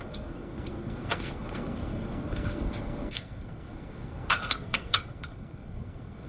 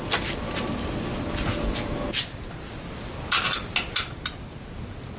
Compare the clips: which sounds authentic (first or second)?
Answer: second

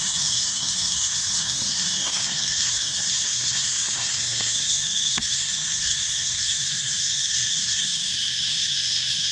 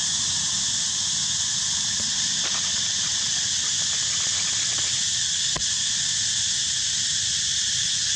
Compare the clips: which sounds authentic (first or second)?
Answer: second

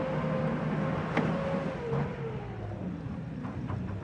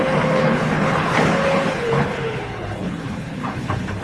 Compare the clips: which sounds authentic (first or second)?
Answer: first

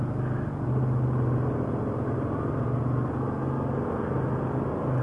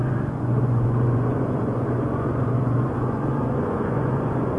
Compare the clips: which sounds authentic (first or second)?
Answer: first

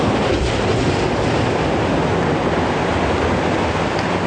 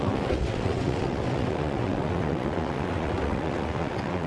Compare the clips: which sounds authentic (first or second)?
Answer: first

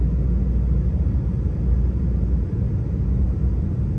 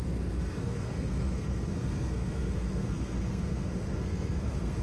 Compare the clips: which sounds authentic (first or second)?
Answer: first